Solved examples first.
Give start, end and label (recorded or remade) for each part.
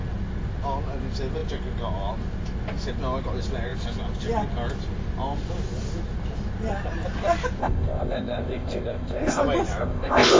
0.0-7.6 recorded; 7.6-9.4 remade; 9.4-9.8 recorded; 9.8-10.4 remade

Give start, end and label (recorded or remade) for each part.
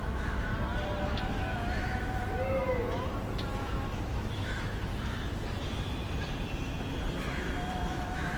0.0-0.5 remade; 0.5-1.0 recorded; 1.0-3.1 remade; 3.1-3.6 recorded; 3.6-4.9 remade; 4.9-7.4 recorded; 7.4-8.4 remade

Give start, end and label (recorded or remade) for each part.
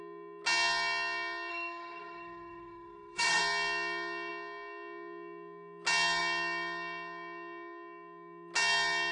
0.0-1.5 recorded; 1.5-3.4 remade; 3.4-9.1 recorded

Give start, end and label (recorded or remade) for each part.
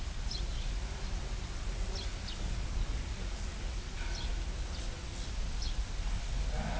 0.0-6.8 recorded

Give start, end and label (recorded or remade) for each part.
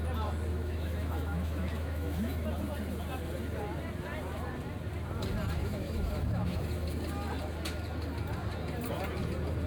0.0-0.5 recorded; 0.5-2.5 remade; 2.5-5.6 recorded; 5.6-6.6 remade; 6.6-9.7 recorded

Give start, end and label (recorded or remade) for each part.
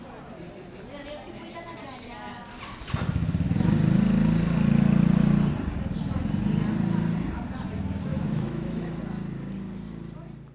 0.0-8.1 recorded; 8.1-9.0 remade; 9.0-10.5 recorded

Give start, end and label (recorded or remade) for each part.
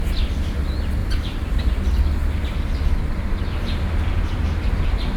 0.0-1.0 recorded; 1.0-1.6 remade; 1.6-5.2 recorded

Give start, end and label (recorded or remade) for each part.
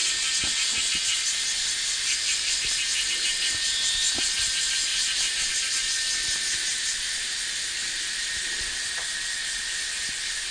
0.0-4.9 recorded; 4.9-5.5 remade; 5.5-10.5 recorded